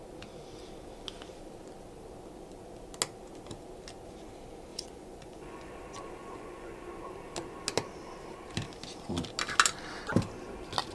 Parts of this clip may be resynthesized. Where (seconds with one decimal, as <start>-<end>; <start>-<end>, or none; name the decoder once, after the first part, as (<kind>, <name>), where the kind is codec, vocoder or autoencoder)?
4.7-5.7 (vocoder, Vocos); 6.2-7.0